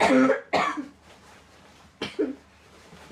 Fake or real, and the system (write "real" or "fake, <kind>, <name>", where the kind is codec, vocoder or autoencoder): real